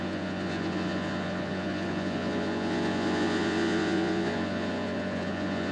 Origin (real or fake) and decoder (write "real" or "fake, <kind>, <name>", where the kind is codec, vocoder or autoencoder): fake, vocoder, Vocos